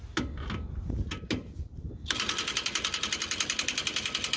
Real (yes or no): yes